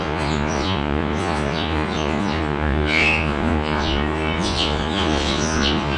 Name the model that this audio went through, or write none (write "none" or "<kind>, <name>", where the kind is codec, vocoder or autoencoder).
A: vocoder, Vocos